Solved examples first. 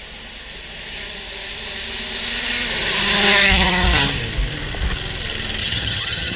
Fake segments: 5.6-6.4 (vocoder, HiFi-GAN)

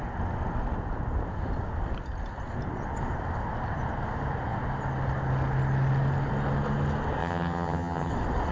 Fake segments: 7.2-8.1 (vocoder, HiFi-GAN)

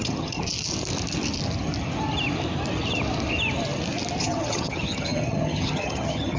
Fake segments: 0.0-0.4 (vocoder, HiFi-GAN); 4.2-6.4